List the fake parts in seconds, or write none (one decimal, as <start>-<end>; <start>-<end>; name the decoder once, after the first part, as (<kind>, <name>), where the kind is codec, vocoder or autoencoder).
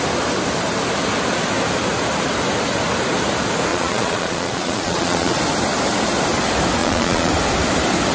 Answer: 3.7-5.4 (vocoder, Vocos); 6.8-7.3